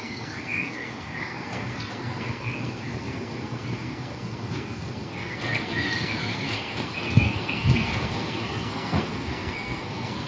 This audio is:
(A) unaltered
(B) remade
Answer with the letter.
B